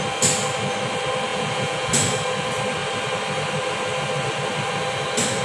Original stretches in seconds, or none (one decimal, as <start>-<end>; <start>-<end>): 0.0-1.3; 1.9-5.4